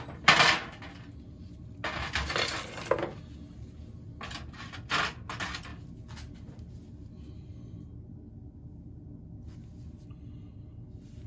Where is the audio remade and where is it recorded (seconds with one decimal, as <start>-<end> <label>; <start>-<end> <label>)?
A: 0.0-11.3 recorded